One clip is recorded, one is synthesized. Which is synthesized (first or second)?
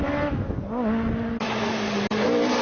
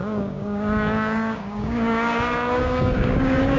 second